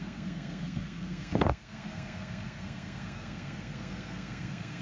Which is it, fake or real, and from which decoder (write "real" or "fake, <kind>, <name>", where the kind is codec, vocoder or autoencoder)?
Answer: fake, codec, SNAC